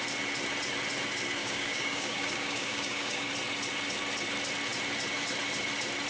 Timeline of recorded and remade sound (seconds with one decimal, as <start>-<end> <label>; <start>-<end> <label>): 0.0-1.4 recorded; 1.4-3.3 remade; 3.3-6.1 recorded